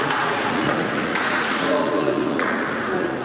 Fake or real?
fake